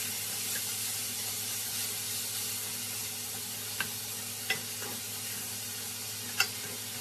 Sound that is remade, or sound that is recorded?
recorded